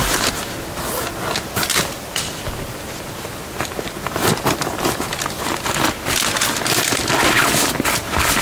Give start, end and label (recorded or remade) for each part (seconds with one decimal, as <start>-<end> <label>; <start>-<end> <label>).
0.0-1.7 recorded; 1.7-5.7 remade; 5.7-8.4 recorded